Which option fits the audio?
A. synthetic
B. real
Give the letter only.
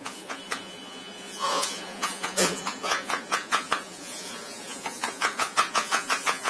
A